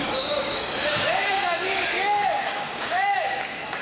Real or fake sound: fake